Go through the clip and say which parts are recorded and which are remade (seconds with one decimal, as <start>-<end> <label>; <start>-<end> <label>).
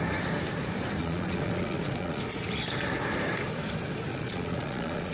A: 0.0-1.0 recorded; 1.0-2.2 remade; 2.2-4.1 recorded; 4.1-5.1 remade